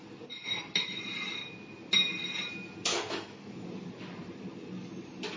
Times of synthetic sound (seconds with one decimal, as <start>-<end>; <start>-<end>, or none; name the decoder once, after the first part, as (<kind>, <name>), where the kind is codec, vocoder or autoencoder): 2.9-3.5 (autoencoder, DAC-VAE)